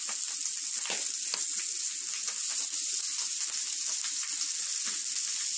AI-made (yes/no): no